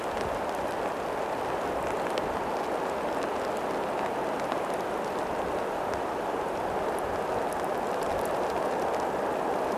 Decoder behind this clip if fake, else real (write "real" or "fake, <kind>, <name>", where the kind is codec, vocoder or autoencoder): real